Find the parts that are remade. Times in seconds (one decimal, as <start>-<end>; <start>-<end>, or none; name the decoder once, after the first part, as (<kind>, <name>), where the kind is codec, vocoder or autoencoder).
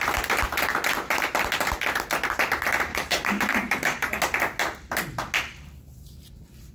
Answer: 2.9-4.2 (codec, DAC)